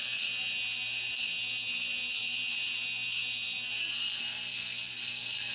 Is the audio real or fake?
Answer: fake